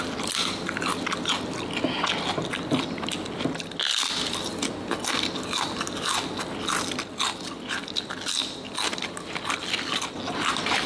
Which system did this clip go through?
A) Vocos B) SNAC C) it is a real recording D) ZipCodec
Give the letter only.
C